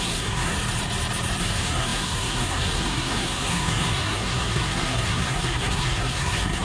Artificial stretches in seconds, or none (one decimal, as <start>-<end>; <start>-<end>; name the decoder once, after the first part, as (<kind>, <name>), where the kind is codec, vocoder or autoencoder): 0.0-0.5 (codec, SNAC); 1.4-6.6